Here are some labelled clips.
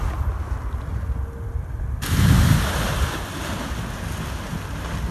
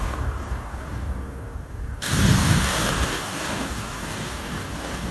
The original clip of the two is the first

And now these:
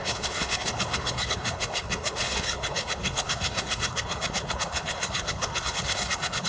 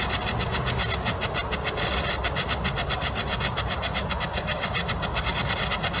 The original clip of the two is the second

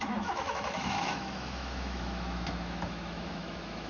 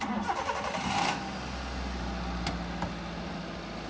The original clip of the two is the second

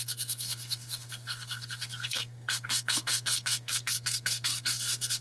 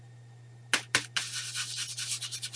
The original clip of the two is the second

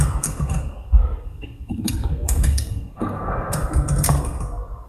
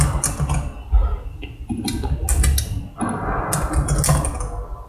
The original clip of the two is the second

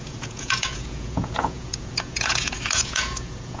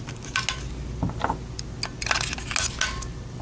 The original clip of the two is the second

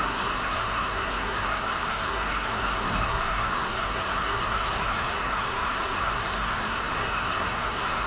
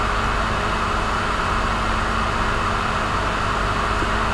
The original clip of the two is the second